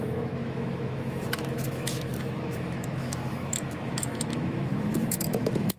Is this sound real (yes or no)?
no